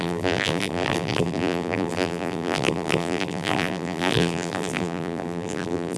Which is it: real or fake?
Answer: fake